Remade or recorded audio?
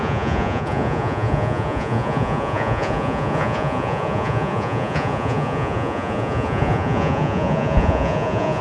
remade